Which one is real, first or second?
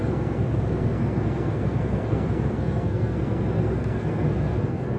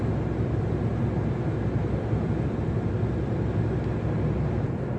second